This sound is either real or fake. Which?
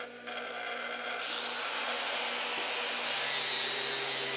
real